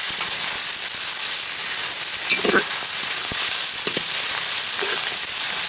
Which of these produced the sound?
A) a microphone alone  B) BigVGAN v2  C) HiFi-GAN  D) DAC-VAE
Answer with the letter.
A